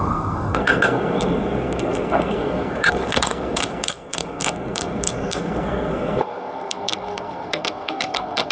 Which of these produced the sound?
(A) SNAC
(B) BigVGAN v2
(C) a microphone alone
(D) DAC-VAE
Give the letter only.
A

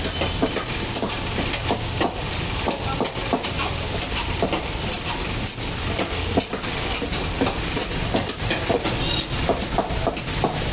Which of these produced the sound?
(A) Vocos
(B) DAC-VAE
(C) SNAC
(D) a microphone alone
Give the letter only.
D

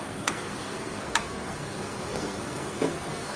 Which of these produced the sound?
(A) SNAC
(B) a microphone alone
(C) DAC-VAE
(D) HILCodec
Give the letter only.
A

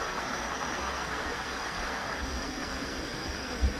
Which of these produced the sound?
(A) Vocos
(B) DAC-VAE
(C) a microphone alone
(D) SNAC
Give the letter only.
D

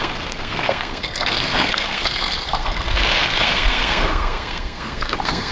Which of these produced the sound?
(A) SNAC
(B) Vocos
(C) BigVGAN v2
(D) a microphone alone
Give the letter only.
A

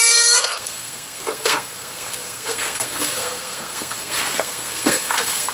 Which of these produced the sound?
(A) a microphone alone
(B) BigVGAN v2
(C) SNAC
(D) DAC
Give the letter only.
C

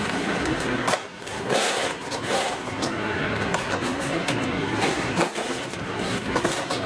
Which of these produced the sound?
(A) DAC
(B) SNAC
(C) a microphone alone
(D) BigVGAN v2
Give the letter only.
B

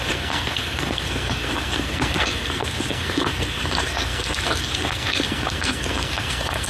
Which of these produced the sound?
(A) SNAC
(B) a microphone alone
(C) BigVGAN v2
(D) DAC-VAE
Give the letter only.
A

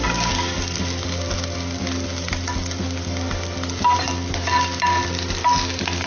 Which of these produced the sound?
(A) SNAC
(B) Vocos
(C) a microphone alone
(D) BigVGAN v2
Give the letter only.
C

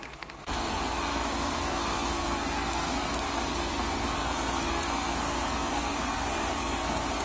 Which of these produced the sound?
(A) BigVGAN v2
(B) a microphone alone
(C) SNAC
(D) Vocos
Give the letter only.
C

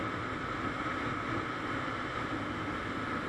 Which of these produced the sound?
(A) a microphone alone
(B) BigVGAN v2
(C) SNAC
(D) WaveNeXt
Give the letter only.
A